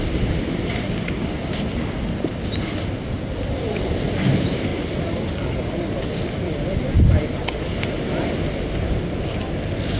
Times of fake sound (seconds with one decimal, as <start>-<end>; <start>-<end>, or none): none